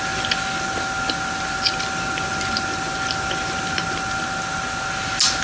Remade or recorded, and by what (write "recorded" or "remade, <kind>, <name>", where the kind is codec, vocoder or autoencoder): recorded